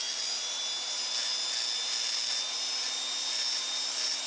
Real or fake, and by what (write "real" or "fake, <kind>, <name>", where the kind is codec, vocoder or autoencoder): real